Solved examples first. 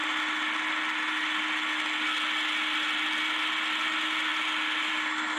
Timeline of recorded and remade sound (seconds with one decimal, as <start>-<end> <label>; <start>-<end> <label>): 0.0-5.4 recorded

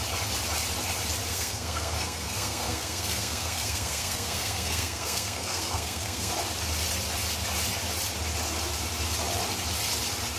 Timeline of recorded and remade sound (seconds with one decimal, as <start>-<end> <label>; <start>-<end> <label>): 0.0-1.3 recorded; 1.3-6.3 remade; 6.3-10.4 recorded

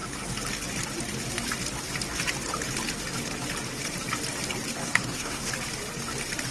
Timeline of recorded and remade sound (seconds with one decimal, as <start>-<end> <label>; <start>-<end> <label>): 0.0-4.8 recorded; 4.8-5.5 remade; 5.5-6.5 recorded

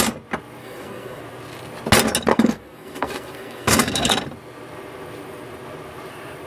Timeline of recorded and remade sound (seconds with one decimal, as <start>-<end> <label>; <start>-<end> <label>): 0.0-0.6 recorded; 0.6-1.2 remade; 1.2-2.3 recorded; 2.3-4.1 remade; 4.1-6.5 recorded

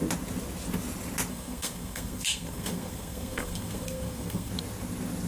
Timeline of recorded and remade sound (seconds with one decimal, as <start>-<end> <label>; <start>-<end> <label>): 0.0-1.3 recorded; 1.3-4.5 remade; 4.5-5.3 recorded

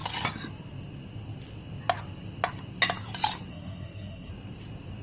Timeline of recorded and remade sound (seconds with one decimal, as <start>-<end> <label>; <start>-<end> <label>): 0.0-3.5 recorded; 3.5-4.3 remade; 4.3-5.0 recorded